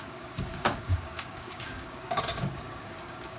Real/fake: fake